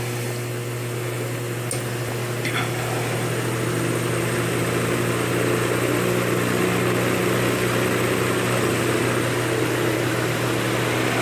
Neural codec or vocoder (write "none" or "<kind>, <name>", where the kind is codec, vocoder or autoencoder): none